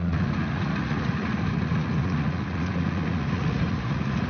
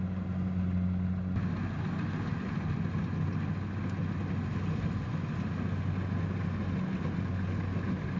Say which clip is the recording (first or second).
second